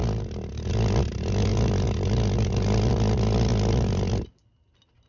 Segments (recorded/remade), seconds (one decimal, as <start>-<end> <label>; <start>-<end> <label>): 0.0-5.1 recorded